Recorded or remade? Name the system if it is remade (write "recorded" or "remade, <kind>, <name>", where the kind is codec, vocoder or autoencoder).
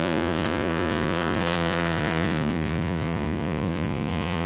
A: remade, vocoder, Vocos